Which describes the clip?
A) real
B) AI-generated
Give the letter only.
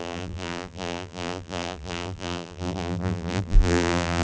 B